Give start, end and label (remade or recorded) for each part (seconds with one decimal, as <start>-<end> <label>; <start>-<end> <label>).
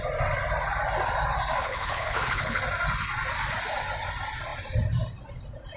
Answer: 0.0-1.6 recorded; 1.6-2.6 remade; 2.6-5.8 recorded